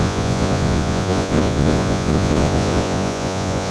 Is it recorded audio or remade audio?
remade